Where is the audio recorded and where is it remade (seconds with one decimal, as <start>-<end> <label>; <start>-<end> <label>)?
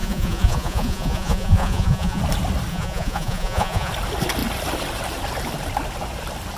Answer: 0.0-2.2 remade; 2.2-2.7 recorded; 2.7-3.9 remade; 3.9-6.6 recorded